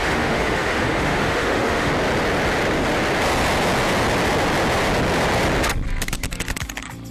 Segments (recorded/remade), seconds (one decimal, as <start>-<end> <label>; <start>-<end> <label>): 0.0-1.9 remade; 1.9-7.1 recorded